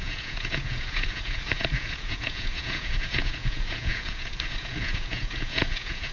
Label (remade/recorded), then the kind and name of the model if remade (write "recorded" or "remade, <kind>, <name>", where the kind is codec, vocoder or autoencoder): remade, vocoder, Vocos